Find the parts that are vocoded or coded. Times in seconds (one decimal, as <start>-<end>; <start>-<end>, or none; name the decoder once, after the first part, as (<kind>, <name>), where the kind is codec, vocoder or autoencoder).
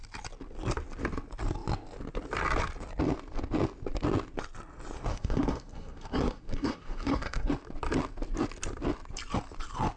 5.1-7.5 (codec, SNAC)